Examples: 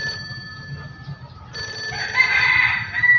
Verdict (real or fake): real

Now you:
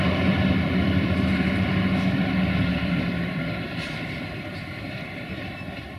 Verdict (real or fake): fake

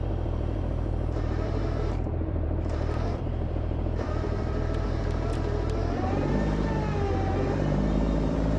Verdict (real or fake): fake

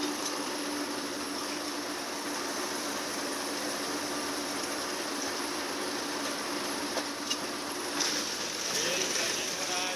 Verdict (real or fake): fake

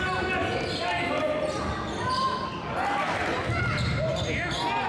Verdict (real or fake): real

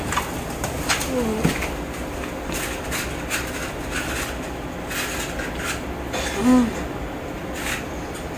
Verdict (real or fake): real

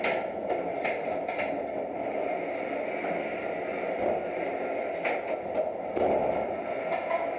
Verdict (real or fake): real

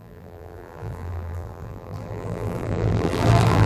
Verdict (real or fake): fake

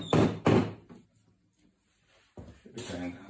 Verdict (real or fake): real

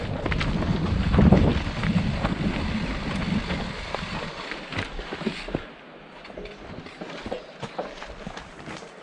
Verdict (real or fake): real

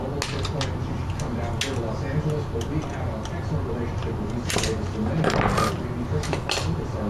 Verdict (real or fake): real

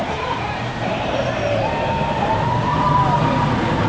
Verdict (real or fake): fake